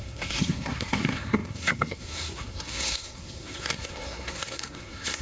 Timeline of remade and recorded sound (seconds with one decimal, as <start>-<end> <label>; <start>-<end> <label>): 0.0-5.2 remade